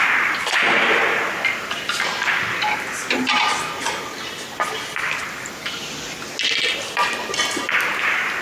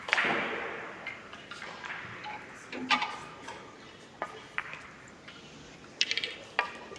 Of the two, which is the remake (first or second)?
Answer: second